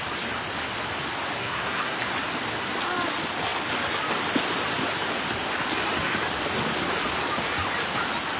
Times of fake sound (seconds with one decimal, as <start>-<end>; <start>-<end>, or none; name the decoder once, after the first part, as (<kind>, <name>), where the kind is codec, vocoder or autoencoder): 1.4-2.0 (codec, SNAC)